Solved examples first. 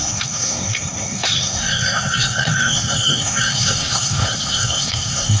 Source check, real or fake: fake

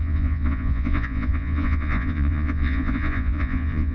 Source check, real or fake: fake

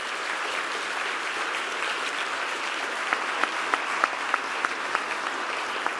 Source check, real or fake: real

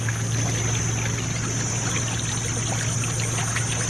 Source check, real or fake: real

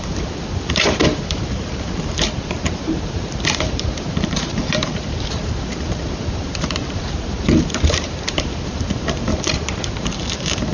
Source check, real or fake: fake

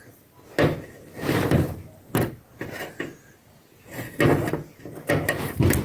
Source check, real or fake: real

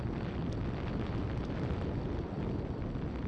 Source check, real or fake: real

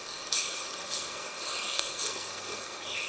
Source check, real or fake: fake